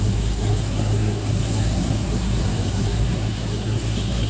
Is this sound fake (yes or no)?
yes